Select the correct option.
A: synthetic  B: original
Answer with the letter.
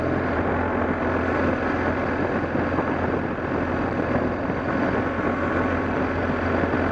B